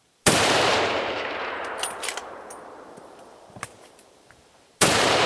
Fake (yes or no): yes